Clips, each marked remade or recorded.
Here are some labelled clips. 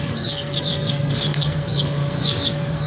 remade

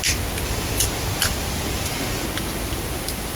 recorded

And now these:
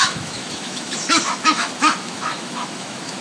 remade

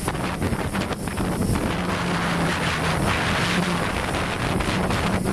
recorded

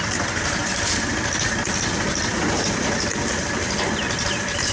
recorded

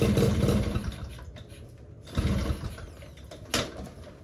recorded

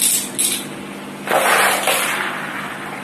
recorded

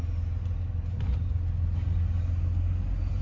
recorded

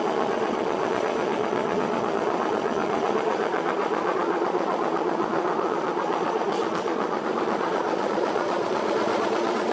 remade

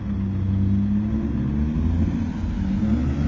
recorded